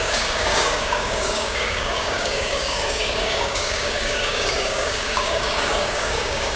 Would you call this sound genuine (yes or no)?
no